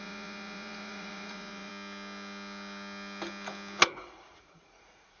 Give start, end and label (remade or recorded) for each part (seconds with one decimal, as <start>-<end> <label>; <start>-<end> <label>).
0.0-1.7 remade; 1.7-3.9 recorded; 3.9-5.2 remade